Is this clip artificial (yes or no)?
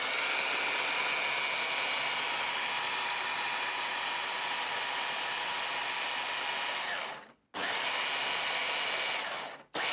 no